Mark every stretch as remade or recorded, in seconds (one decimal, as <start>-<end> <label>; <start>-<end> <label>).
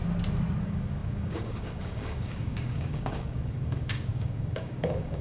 0.0-0.6 recorded; 0.6-5.2 remade